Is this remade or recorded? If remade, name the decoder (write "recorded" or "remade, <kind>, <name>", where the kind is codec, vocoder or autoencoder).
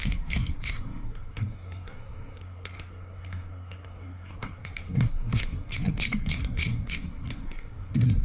remade, codec, SNAC